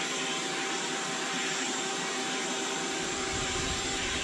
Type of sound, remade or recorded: remade